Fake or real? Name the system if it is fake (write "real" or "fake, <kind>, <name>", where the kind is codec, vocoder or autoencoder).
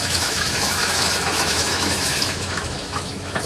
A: fake, autoencoder, DAC-VAE